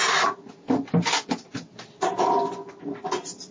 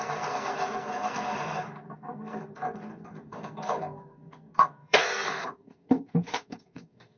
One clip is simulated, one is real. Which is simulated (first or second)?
second